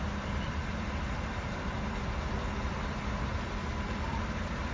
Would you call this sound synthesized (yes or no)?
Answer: no